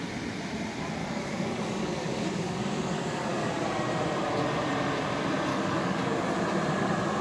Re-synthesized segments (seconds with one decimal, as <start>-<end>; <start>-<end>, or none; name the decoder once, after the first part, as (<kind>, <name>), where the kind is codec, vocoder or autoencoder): 1.0-3.5 (codec, DAC); 5.5-6.2